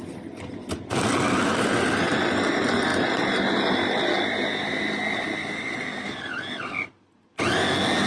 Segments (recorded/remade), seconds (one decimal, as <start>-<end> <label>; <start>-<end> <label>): 0.0-8.1 recorded